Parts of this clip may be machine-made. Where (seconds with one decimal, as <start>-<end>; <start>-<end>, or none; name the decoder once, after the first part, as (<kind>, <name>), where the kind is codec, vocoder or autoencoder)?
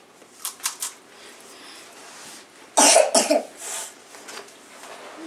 none